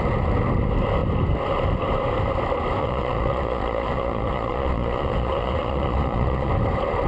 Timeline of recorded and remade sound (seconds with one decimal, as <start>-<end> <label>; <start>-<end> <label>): 0.0-2.8 recorded; 2.8-6.5 remade; 6.5-7.1 recorded